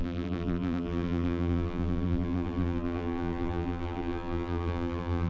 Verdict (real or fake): fake